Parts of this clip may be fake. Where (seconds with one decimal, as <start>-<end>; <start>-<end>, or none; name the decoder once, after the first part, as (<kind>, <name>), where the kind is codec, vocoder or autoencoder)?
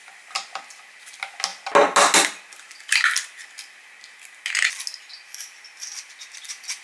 none